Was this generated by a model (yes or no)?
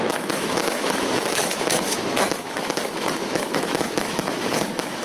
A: yes